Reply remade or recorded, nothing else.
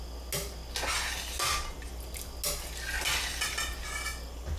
recorded